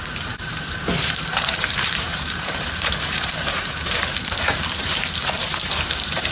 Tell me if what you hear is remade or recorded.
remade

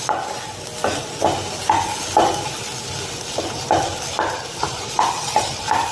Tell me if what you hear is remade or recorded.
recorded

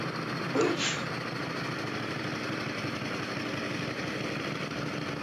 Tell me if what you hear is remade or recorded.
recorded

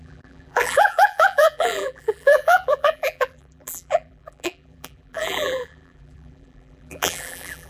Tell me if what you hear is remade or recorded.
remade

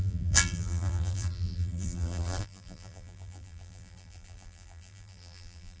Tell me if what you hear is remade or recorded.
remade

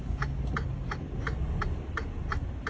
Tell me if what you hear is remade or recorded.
recorded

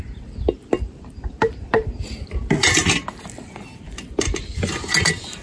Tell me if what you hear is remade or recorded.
recorded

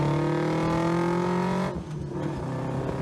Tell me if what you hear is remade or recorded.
recorded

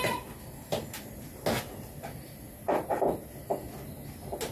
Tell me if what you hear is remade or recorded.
recorded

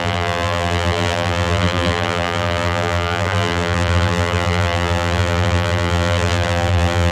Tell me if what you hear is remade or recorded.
remade